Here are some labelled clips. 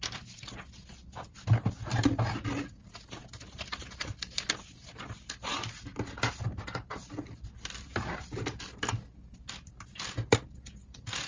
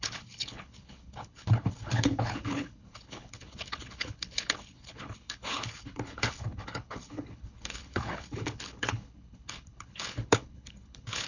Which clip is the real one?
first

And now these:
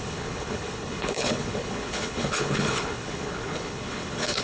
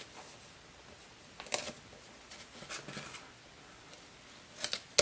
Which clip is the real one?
second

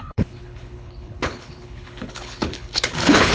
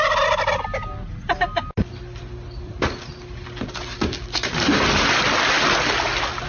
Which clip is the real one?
second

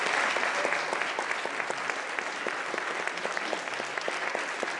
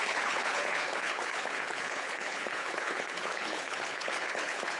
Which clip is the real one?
first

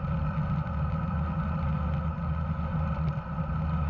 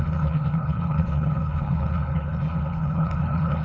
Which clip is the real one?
first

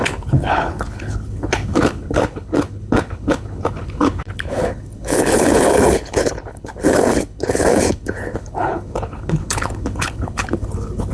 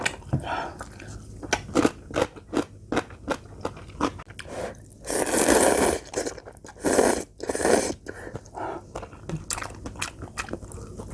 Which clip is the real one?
second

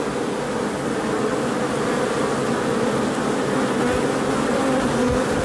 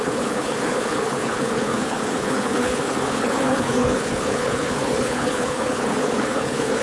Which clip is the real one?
first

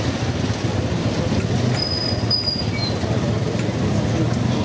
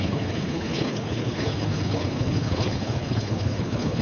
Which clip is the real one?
first